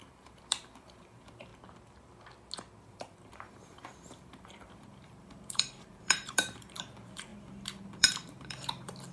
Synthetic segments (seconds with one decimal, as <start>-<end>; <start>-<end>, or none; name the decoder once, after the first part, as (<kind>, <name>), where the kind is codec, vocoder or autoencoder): 0.0-1.5 (vocoder, BigVGAN v2); 2.8-9.1